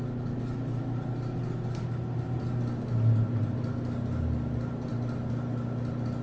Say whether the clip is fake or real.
real